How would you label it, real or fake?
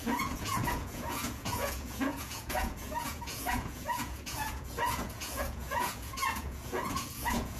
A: fake